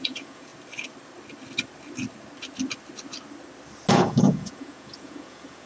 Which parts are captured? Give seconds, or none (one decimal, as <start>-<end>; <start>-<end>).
0.5-3.9